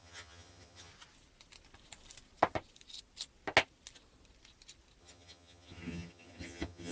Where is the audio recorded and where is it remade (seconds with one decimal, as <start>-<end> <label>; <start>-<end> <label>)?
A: 0.0-0.9 remade; 0.9-5.0 recorded; 5.0-6.9 remade